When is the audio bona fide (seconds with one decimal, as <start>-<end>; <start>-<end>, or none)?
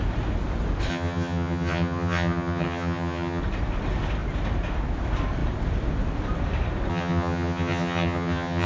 0.0-0.9; 3.4-6.9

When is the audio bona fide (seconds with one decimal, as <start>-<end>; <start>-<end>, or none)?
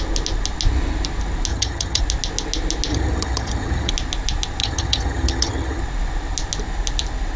0.0-1.5; 2.0-2.9; 3.9-4.6; 5.8-7.4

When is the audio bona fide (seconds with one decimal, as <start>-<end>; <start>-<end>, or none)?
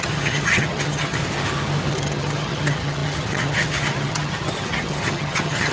1.2-1.9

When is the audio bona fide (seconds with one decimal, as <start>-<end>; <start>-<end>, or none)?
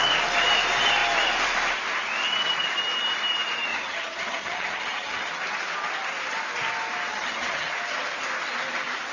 0.0-3.7; 5.3-7.1; 7.7-9.1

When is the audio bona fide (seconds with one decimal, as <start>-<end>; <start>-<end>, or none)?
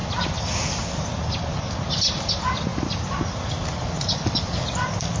0.0-5.2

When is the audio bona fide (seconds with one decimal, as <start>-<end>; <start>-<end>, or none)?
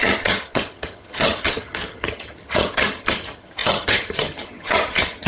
none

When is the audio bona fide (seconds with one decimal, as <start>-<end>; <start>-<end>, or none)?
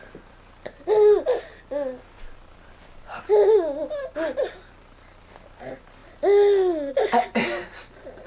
0.0-8.3